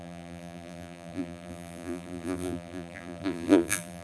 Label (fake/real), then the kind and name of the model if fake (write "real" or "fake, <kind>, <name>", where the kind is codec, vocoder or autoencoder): fake, vocoder, BigVGAN v2